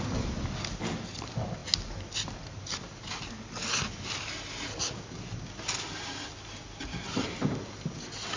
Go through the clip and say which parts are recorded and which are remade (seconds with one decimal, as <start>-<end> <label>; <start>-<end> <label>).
0.0-8.4 recorded